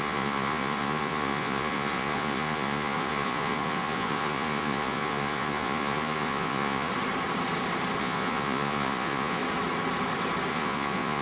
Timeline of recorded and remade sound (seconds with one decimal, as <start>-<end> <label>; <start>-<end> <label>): 0.0-6.9 remade; 6.9-8.0 recorded; 8.0-9.4 remade; 9.4-10.5 recorded; 10.5-11.2 remade